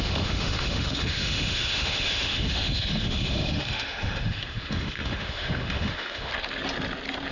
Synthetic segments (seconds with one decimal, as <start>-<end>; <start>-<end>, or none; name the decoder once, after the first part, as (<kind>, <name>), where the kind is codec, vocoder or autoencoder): 0.0-6.3 (autoencoder, DAC-VAE)